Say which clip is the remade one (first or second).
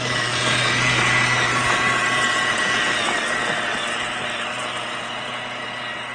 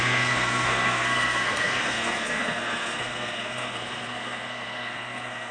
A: second